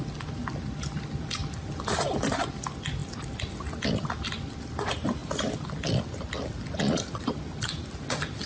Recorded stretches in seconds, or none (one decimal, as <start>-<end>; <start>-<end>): 0.0-8.5